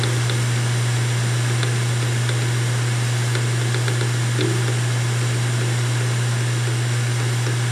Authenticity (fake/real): real